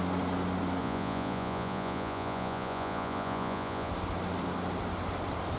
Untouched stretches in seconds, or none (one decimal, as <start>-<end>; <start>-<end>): 0.0-0.8; 3.9-5.6